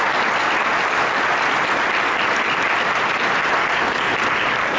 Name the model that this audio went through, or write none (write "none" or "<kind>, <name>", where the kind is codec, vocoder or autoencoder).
none